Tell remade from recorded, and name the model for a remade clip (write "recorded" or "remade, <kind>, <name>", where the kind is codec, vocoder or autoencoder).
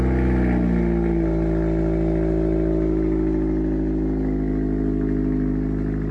recorded